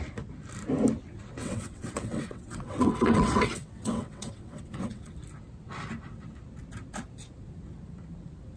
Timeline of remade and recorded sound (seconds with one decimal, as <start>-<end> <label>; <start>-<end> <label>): 0.0-1.4 recorded; 1.4-5.1 remade; 5.1-8.6 recorded